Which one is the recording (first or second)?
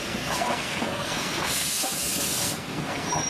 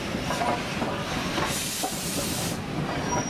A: second